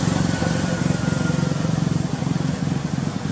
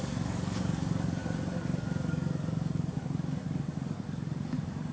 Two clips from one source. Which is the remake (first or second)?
second